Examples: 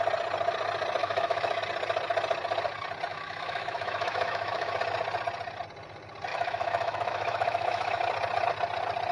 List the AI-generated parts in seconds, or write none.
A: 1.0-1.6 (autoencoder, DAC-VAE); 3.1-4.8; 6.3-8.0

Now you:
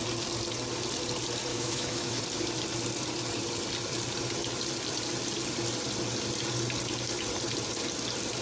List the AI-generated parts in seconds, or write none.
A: 1.5-2.2 (autoencoder, DAC-VAE)

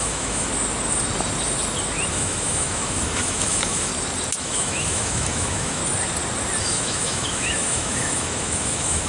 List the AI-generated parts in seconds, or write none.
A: 0.0-0.5 (autoencoder, DAC-VAE); 2.1-3.9; 4.4-5.8; 6.6-9.1

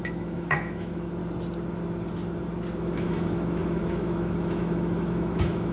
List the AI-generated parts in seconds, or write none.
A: 0.0-1.2 (autoencoder, DAC-VAE); 2.8-5.7

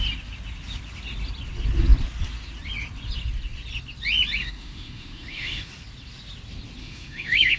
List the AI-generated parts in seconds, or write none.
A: 4.4-5.7 (autoencoder, DAC-VAE); 6.8-7.6